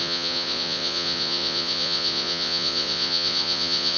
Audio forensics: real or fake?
fake